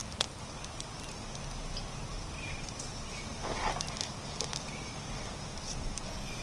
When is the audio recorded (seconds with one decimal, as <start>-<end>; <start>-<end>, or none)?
0.0-2.6